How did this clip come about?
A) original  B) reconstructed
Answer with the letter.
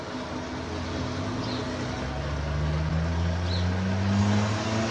A